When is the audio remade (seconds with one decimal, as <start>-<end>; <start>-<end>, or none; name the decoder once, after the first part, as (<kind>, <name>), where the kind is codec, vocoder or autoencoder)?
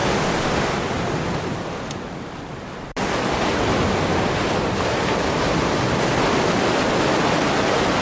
none